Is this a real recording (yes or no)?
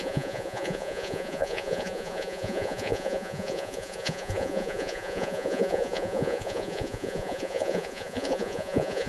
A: no